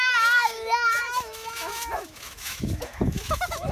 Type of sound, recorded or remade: remade